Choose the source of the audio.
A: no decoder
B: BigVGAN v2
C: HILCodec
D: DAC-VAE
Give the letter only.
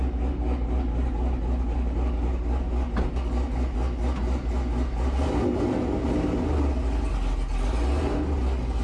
A